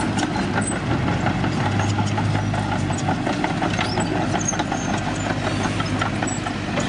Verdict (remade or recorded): recorded